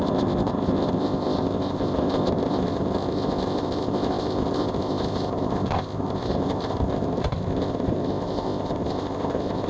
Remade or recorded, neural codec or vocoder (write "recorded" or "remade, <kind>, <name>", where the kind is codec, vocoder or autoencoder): remade, codec, ZipCodec